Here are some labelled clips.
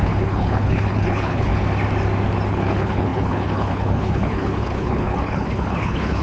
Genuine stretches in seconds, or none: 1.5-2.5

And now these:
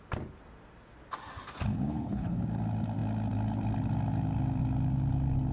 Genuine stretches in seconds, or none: 0.0-1.7; 2.4-5.5

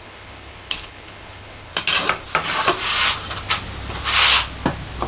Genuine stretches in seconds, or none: 1.7-5.1

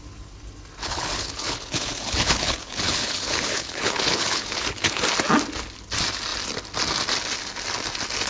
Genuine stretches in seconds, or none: 0.0-0.8; 5.0-8.3

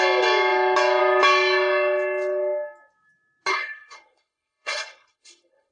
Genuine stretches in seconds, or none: 0.0-3.5

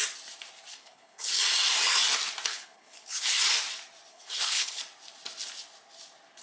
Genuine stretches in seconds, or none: 0.0-0.7; 1.3-2.5; 3.3-4.1; 4.8-6.4

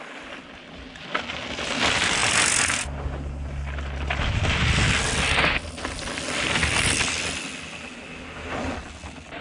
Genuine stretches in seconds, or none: 0.0-9.4

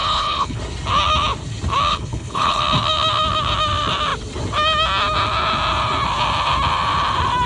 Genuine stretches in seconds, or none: 0.6-1.9; 2.6-7.5